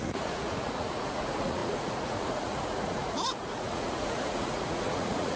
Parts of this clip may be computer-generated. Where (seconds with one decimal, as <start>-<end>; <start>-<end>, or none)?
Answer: 0.0-5.4